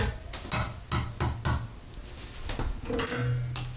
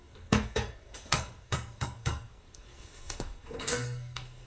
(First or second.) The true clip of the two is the first